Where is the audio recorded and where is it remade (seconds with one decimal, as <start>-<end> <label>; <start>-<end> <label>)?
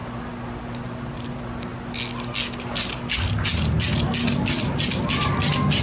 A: 0.0-5.8 recorded